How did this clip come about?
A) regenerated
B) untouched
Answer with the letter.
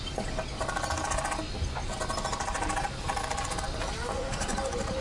B